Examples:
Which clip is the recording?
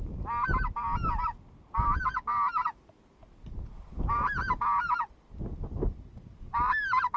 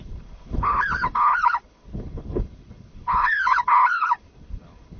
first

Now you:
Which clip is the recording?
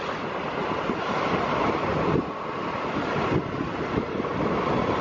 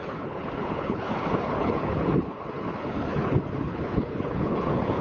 first